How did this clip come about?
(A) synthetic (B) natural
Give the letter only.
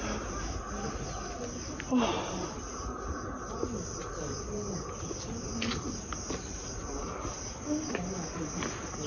B